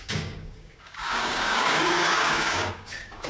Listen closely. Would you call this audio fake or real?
fake